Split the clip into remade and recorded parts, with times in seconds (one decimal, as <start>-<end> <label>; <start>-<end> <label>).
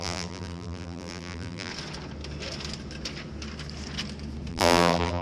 0.0-1.7 remade; 1.7-4.5 recorded; 4.5-5.2 remade